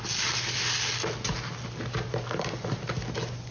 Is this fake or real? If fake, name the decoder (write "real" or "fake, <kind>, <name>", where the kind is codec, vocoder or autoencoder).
real